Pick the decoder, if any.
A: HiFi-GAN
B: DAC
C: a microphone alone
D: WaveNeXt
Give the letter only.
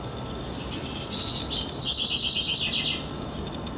C